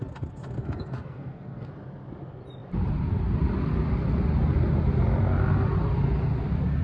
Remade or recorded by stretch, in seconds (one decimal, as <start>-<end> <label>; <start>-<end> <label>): 0.0-0.6 recorded; 0.6-1.7 remade; 1.7-6.8 recorded